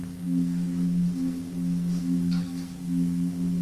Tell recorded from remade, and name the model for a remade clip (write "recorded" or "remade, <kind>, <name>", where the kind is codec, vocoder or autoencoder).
remade, codec, SNAC